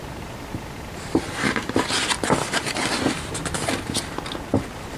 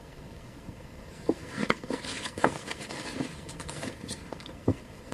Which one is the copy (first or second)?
second